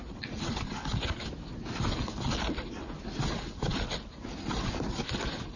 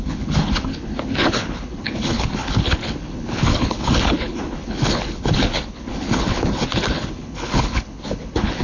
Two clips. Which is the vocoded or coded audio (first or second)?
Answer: second